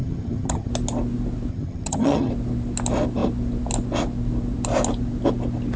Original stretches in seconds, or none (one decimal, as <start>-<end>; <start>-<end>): 0.7-1.5; 2.3-5.8